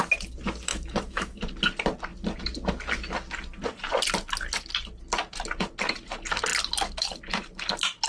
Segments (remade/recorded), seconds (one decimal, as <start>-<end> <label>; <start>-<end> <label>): 0.0-0.7 recorded; 0.7-1.4 remade; 1.4-8.1 recorded